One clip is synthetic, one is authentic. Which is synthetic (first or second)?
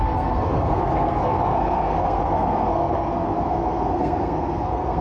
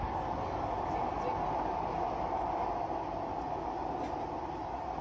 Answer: first